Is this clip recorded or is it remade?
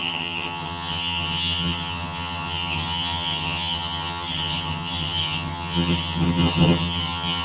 remade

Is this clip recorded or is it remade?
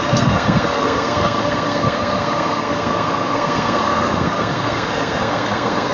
remade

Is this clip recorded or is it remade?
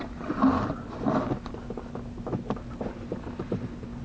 recorded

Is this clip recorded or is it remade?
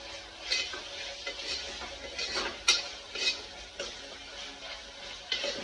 recorded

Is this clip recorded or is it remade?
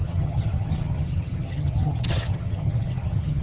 remade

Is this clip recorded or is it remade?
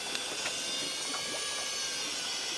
recorded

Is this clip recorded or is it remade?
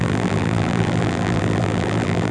remade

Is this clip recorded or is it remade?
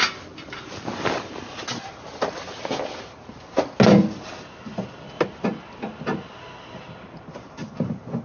recorded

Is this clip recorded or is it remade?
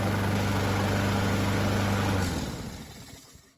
recorded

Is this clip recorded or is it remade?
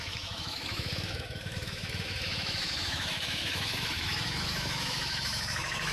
remade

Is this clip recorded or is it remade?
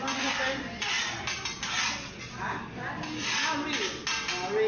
recorded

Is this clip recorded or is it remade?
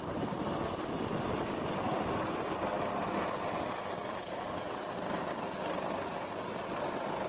recorded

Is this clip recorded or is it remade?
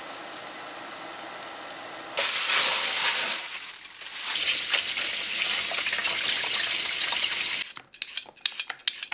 recorded